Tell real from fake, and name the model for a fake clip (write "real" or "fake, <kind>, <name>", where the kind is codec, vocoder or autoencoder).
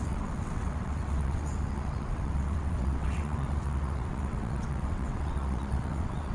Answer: fake, vocoder, WaveNeXt